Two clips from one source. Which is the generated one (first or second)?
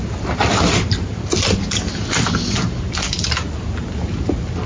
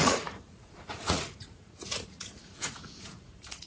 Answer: second